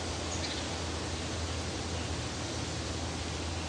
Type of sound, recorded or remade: recorded